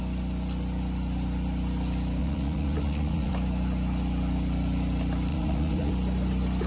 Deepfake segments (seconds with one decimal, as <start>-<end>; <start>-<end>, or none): 2.2-3.3; 5.3-5.9